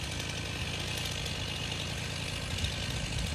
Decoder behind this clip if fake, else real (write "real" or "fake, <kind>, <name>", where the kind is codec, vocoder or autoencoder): real